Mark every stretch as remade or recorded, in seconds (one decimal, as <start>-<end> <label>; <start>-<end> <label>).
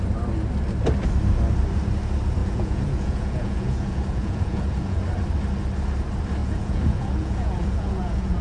0.0-2.4 recorded; 2.4-5.0 remade; 5.0-6.4 recorded; 6.4-8.4 remade